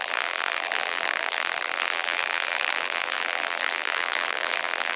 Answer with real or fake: fake